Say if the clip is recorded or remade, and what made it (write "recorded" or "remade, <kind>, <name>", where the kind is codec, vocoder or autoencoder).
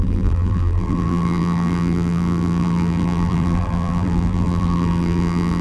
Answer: remade, vocoder, BigVGAN v2